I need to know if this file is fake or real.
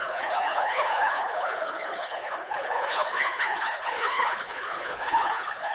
fake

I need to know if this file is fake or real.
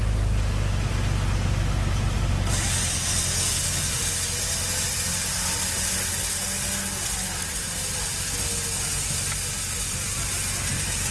real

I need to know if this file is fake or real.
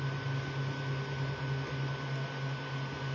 real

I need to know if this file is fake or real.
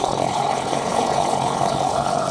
fake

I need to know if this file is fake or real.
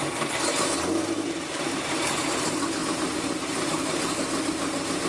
real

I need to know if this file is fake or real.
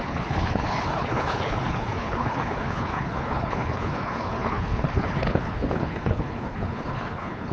fake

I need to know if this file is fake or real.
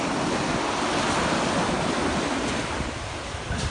real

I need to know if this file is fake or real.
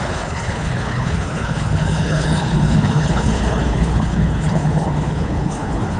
fake